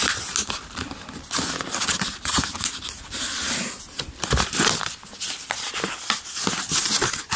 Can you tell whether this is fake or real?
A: real